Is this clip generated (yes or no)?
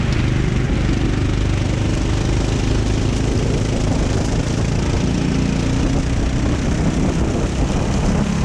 no